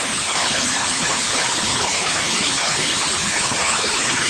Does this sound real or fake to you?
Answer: fake